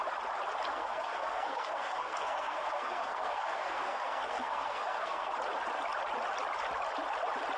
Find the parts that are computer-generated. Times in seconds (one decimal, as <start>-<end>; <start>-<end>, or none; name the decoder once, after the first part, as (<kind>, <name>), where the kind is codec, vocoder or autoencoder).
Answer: 0.7-5.3 (codec, SNAC)